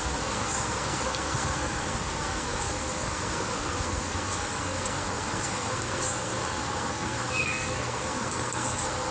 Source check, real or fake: fake